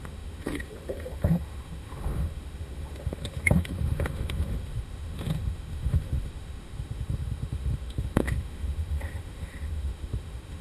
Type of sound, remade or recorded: remade